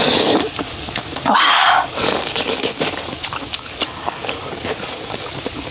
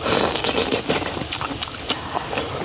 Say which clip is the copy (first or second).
first